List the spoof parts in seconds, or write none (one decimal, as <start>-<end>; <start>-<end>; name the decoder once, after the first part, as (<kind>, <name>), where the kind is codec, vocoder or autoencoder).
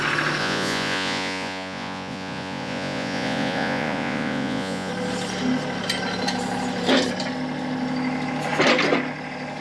0.4-4.9 (vocoder, Vocos)